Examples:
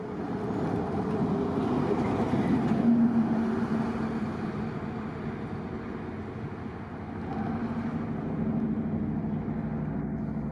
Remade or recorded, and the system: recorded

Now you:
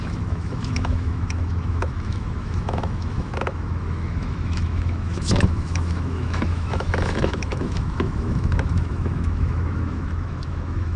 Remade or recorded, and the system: remade, autoencoder, DAC-VAE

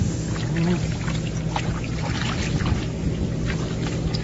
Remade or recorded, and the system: recorded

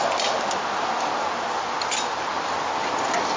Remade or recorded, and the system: recorded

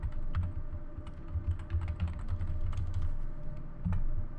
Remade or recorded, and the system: recorded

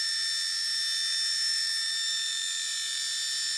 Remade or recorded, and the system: recorded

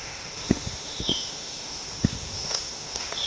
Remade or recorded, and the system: remade, autoencoder, DAC-VAE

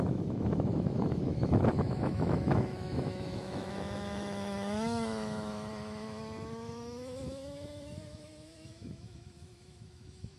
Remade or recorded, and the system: remade, autoencoder, DAC-VAE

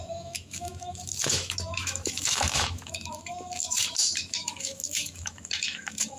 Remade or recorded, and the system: remade, autoencoder, DAC-VAE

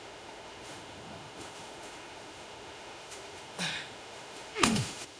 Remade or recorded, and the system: remade, autoencoder, DAC-VAE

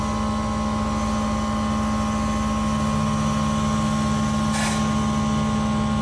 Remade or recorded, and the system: recorded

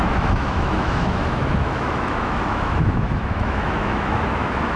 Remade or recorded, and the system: remade, autoencoder, DAC-VAE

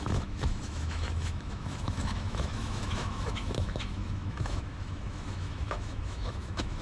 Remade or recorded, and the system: remade, autoencoder, DAC-VAE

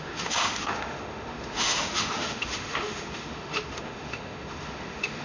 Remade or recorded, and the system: remade, autoencoder, DAC-VAE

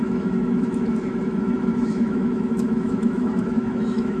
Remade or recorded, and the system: remade, autoencoder, DAC-VAE